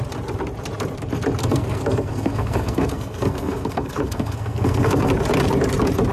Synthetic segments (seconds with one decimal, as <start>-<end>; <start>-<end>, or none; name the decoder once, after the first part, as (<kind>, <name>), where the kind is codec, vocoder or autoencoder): 1.4-5.1 (codec, SNAC)